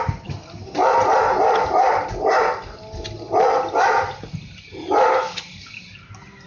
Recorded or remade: recorded